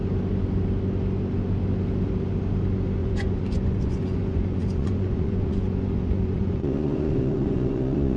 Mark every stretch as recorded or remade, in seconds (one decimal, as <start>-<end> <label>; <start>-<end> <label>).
0.0-3.0 recorded; 3.0-8.2 remade

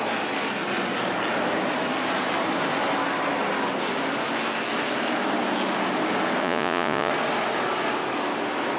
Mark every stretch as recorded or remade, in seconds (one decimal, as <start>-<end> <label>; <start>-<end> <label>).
0.0-6.4 recorded; 6.4-7.1 remade; 7.1-8.8 recorded